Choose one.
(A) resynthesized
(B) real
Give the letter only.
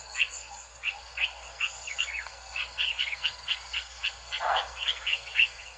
A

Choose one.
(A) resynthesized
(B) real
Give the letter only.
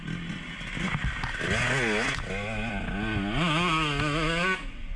B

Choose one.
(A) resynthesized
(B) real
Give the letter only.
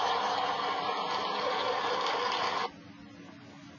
B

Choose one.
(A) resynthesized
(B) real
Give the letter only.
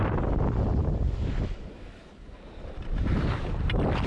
B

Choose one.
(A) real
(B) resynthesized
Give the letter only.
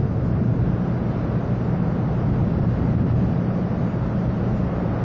A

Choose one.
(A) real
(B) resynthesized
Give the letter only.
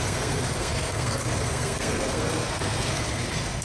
B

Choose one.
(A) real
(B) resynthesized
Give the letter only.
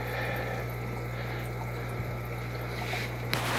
A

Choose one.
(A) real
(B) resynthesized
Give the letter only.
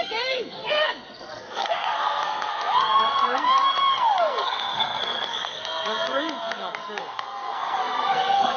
B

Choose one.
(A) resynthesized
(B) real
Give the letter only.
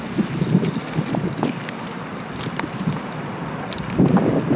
B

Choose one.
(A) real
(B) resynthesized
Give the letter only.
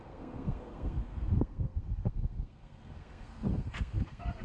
B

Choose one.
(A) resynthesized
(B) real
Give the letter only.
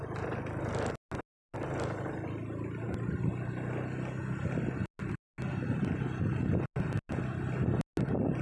B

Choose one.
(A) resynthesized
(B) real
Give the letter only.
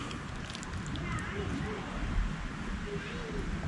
B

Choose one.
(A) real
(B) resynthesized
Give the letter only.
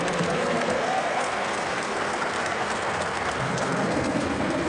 B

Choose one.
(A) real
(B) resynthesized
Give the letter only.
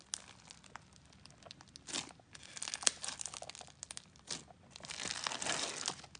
A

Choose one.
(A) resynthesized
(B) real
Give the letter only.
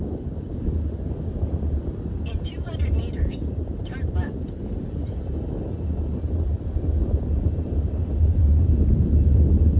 B